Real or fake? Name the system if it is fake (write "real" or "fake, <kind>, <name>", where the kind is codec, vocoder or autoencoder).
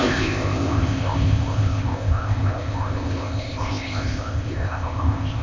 fake, codec, ZipCodec